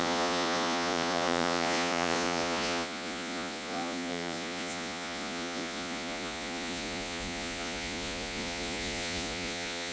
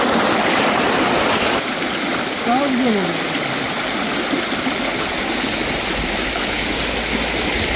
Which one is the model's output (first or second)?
first